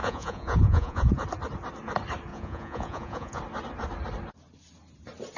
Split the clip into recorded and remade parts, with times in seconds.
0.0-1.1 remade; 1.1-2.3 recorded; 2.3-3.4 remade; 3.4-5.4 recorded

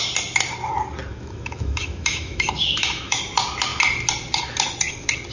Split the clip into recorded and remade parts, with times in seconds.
0.0-1.1 recorded; 1.1-3.2 remade; 3.2-5.3 recorded

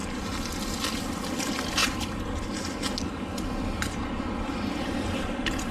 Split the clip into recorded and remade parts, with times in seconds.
0.0-5.7 recorded

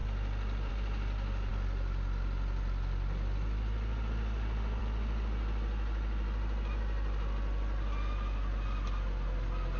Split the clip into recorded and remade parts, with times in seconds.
0.0-9.8 recorded

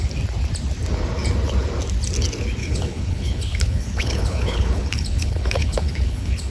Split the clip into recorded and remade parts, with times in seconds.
0.0-2.6 recorded; 2.6-6.5 remade

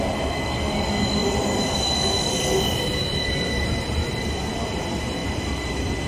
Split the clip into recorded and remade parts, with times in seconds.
0.0-1.2 recorded; 1.2-2.4 remade; 2.4-5.2 recorded; 5.2-6.1 remade

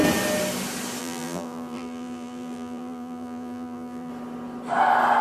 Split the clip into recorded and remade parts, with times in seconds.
0.0-1.0 recorded; 1.0-4.1 remade; 4.1-5.2 recorded

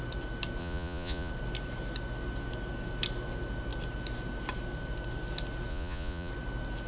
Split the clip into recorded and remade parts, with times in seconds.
0.0-0.6 recorded; 0.6-1.3 remade; 1.3-5.7 recorded; 5.7-6.3 remade; 6.3-6.9 recorded